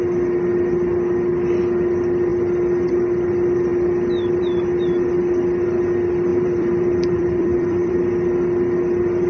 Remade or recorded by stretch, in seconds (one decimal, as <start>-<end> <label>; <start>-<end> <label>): 0.0-6.3 recorded; 6.3-7.9 remade; 7.9-9.3 recorded